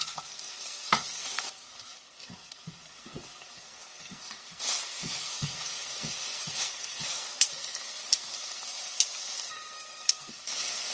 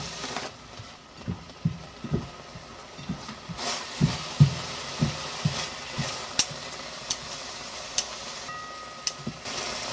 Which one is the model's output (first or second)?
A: first